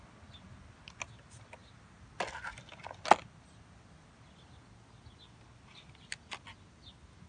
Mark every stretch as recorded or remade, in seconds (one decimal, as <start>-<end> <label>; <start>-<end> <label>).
0.0-7.3 recorded